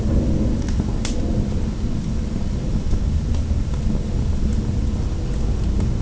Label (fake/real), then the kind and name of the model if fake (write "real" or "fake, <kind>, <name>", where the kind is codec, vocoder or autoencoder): real